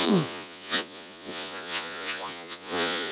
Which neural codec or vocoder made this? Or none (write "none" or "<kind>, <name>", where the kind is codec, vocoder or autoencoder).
vocoder, Vocos